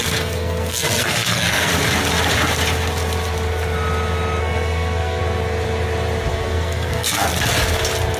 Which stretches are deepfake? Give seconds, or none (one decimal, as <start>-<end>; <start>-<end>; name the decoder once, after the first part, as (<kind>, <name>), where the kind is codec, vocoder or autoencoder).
0.0-1.7 (codec, SNAC); 4.4-5.2; 6.3-7.3